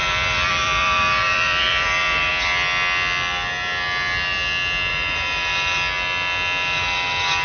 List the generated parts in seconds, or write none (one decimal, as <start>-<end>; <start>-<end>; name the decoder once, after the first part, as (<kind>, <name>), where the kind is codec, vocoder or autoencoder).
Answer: 0.0-2.3 (vocoder, BigVGAN v2); 4.9-5.5